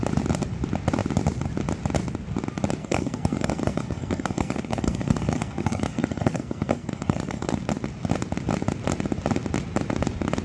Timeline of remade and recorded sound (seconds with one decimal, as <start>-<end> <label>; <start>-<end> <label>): 0.0-2.8 recorded; 2.8-7.5 remade; 7.5-10.4 recorded